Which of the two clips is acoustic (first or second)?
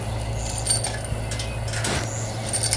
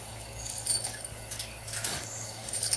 first